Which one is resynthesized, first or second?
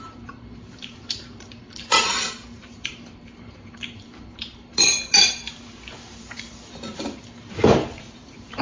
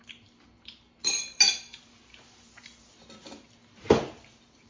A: first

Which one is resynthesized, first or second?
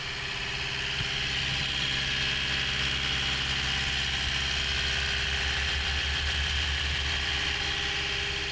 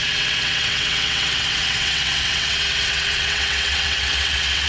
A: second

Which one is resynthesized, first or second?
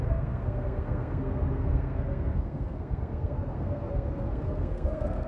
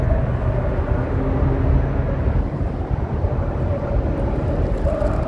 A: first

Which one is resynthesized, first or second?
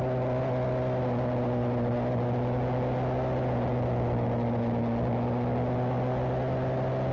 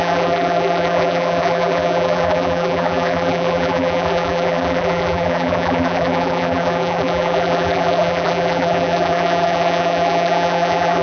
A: second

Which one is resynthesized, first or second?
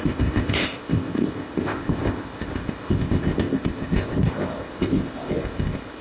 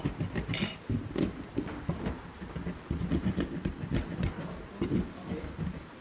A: first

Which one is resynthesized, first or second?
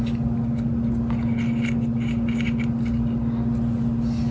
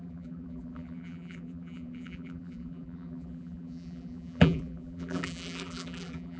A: second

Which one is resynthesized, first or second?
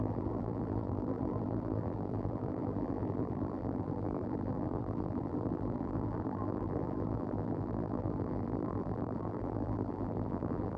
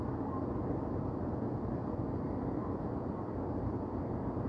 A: first